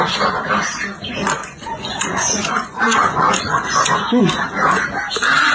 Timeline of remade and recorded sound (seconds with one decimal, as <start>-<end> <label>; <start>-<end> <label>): 0.0-1.4 recorded; 1.4-4.2 remade; 4.2-5.5 recorded